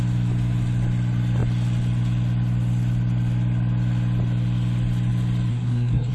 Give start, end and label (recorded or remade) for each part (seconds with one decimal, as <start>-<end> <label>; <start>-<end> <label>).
0.0-5.5 recorded; 5.5-6.1 remade